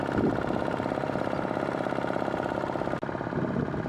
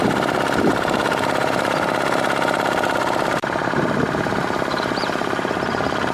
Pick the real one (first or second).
first